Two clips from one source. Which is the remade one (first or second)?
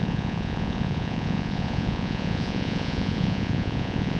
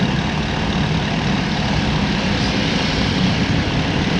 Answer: first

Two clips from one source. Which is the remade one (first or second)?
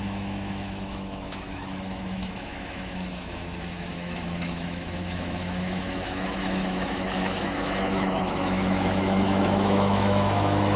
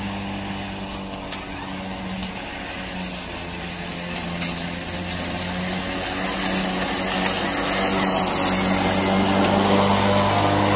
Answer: first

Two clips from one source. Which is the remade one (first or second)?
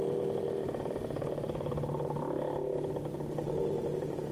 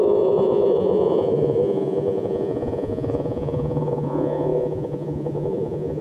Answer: second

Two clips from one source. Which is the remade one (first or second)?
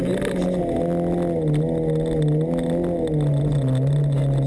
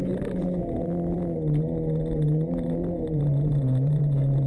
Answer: second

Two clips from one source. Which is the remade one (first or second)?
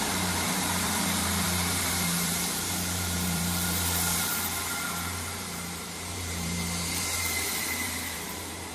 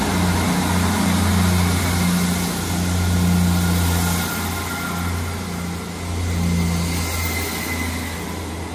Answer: first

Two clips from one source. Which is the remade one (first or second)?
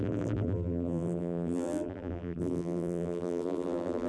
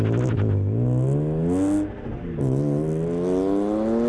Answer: first